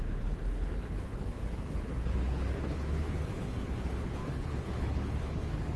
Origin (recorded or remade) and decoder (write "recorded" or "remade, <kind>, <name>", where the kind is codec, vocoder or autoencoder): remade, codec, HILCodec